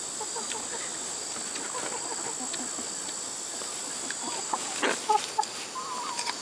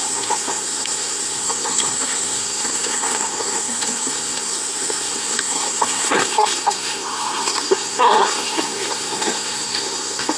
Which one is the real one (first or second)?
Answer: first